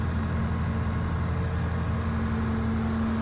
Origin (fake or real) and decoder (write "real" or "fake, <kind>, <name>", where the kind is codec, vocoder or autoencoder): real